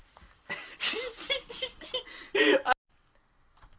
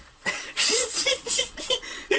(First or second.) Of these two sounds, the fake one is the second